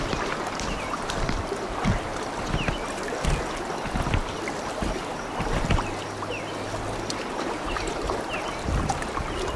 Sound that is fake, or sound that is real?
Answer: real